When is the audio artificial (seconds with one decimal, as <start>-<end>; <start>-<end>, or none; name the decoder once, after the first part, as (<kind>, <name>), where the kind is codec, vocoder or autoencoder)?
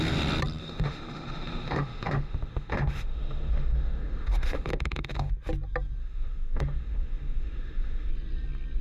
0.6-5.3 (autoencoder, DAC-VAE); 6.0-8.1